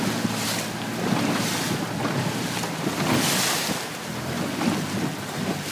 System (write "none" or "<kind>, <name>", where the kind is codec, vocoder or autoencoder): none